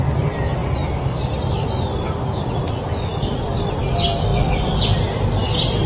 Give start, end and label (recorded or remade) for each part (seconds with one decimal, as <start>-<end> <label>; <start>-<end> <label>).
0.0-3.1 recorded; 3.1-3.8 remade; 3.8-4.3 recorded; 4.3-5.9 remade